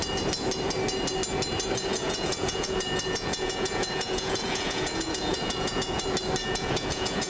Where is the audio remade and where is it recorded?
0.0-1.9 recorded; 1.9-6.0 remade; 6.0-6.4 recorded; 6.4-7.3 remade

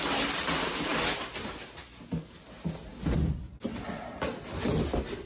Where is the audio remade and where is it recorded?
0.0-5.3 recorded

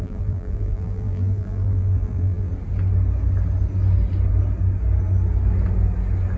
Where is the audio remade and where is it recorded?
0.0-2.5 remade; 2.5-6.4 recorded

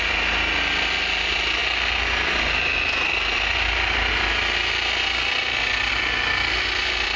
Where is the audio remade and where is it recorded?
0.0-7.2 recorded

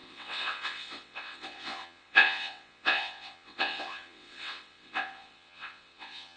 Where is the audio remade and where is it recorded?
0.0-6.4 remade

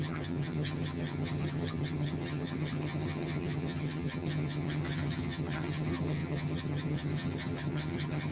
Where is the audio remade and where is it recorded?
0.0-8.3 remade